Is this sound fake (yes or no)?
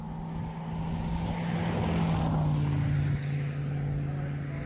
no